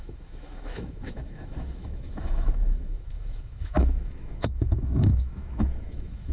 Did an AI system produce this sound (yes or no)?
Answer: yes